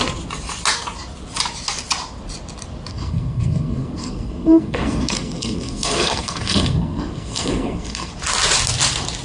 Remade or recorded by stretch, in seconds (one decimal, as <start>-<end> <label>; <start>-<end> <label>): 0.0-2.9 recorded; 2.9-8.1 remade; 8.1-9.2 recorded

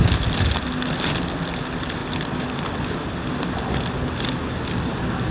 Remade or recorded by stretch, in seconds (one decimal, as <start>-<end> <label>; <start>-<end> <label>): 0.0-5.3 recorded

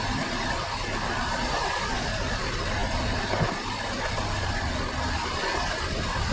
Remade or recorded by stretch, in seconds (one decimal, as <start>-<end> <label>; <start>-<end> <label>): 0.0-6.3 recorded

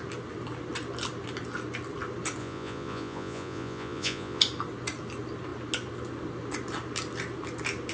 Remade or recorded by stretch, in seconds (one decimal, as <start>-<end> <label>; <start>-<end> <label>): 0.0-2.4 recorded; 2.4-4.4 remade; 4.4-7.9 recorded

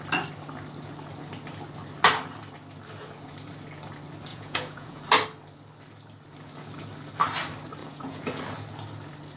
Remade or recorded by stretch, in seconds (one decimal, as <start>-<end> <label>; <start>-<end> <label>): 0.0-4.3 recorded; 4.3-5.0 remade; 5.0-7.8 recorded; 7.8-8.4 remade; 8.4-9.4 recorded

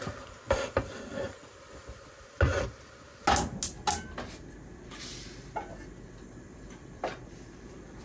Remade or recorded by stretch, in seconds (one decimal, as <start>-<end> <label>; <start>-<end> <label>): 0.0-1.4 remade; 1.4-6.2 recorded; 6.2-8.0 remade

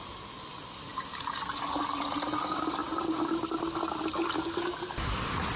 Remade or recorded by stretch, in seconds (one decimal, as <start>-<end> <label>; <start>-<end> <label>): 0.0-5.6 recorded